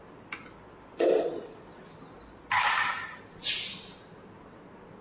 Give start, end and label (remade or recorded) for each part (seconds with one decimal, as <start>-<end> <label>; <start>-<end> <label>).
0.0-5.0 recorded